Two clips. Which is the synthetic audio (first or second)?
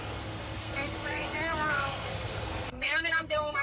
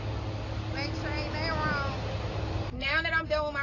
first